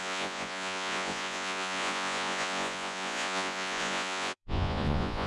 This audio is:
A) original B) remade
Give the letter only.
B